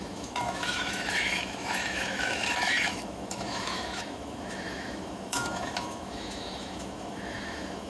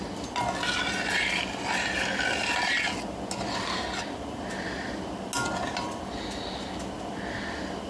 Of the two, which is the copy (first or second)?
first